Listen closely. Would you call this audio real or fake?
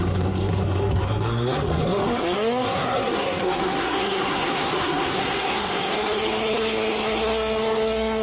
fake